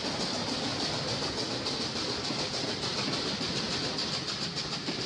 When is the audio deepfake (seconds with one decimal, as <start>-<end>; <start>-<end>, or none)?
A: none